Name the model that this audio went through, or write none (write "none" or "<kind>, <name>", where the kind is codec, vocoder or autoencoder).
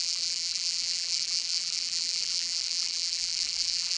vocoder, BigVGAN v2